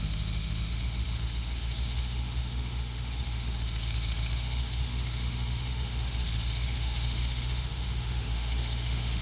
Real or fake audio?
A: fake